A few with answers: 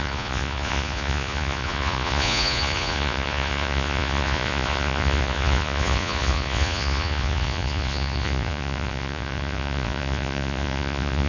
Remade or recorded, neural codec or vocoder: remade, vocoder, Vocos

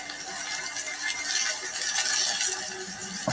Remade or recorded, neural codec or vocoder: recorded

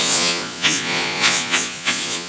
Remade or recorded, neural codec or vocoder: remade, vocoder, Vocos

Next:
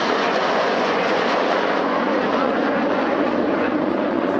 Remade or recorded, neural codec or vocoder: remade, vocoder, Vocos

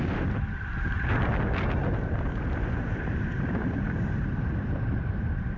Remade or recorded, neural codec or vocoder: recorded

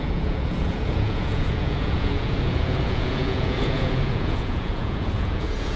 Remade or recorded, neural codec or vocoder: remade, vocoder, Vocos